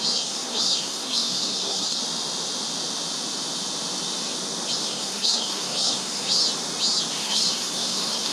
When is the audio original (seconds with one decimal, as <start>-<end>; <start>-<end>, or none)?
2.0-4.8; 6.4-7.2